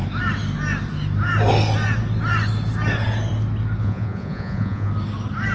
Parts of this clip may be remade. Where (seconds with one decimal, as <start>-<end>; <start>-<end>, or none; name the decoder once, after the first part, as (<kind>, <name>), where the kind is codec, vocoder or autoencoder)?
3.8-4.9 (vocoder, Vocos)